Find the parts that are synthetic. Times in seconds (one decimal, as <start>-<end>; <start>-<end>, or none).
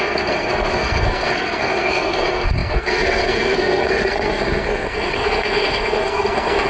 0.0-6.7